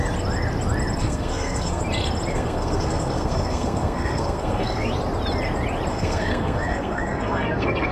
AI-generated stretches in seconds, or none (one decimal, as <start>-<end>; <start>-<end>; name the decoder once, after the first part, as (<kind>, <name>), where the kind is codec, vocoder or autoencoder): 1.0-1.8 (codec, SNAC); 2.3-4.9; 5.9-7.9